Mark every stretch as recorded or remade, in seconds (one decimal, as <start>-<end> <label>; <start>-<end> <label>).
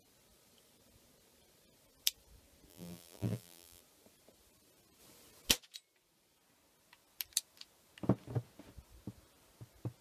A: 0.0-2.7 recorded; 2.7-3.8 remade; 3.8-10.0 recorded